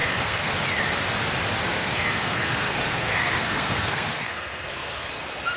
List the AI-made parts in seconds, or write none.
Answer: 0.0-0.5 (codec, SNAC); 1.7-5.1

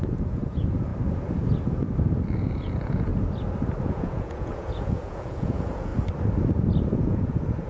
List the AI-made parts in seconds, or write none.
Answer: 0.0-0.9 (vocoder, Vocos); 2.4-3.1; 3.9-5.9; 6.9-7.7

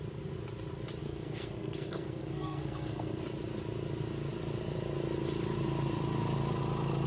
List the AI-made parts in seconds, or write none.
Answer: 1.0-3.2 (codec, SNAC)

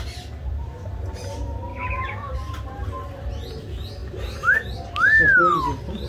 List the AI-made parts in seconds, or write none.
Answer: 1.7-2.3 (autoencoder, DAC-VAE)

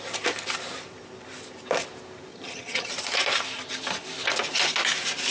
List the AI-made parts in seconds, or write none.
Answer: 2.3-2.9 (vocoder, HiFi-GAN)